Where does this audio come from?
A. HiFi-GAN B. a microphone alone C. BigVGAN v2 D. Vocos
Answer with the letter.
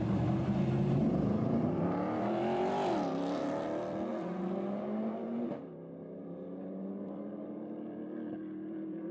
C